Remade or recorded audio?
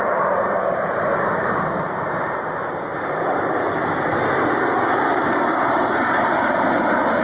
remade